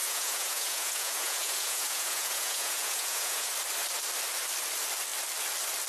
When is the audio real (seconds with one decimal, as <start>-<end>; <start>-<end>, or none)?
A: 3.5-5.9